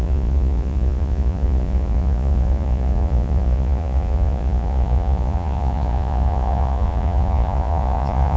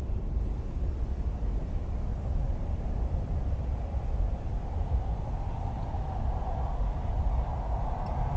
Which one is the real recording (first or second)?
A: second